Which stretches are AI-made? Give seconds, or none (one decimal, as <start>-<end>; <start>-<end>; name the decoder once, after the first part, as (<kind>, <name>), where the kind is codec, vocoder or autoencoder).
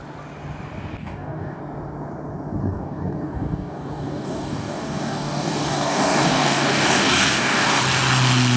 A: 1.0-1.6 (codec, DAC); 2.6-7.8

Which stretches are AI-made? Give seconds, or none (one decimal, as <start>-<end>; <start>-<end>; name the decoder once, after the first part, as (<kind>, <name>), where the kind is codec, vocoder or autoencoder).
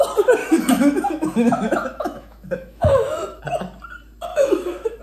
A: 0.4-3.4 (autoencoder, DAC-VAE); 4.3-5.0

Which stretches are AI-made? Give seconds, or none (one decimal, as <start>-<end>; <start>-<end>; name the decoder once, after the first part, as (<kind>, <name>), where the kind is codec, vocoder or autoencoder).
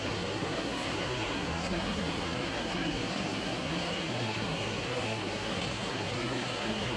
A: 0.0-7.0 (codec, SNAC)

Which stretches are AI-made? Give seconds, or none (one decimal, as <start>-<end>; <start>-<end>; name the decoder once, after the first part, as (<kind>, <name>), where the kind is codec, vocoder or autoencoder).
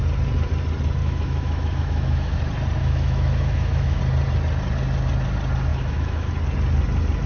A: 1.0-2.4 (autoencoder, DAC-VAE); 2.8-4.0; 5.7-6.3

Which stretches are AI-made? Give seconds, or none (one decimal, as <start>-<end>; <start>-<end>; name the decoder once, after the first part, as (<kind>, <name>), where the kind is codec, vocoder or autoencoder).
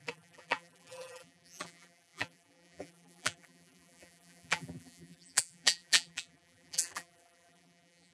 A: 0.0-8.1 (vocoder, BigVGAN v2)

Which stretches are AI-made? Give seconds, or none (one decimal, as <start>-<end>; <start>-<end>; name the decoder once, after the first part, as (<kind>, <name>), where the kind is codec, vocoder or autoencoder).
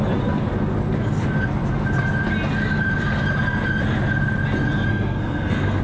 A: 4.9-5.8 (codec, SNAC)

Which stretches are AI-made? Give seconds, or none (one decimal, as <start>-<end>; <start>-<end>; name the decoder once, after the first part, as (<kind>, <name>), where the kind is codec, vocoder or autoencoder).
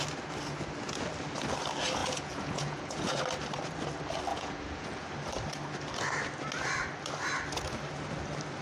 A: 2.0-3.2 (vocoder, Vocos); 4.3-5.1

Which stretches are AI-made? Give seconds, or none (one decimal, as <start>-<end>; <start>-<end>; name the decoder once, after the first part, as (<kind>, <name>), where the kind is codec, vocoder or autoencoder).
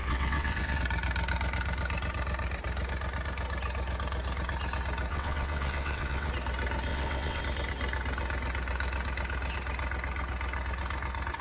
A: 0.0-0.8 (vocoder, WaveNeXt); 5.1-6.3; 6.9-7.4